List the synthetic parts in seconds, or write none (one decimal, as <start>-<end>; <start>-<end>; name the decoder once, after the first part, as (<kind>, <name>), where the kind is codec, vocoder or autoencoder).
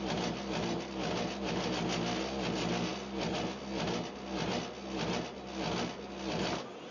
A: none